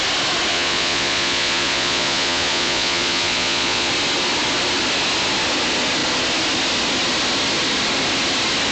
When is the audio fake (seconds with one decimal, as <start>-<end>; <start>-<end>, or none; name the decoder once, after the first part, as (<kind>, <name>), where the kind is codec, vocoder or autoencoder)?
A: 0.5-3.9 (vocoder, Vocos)